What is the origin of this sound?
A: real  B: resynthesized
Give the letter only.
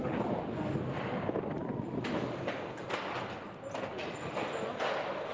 A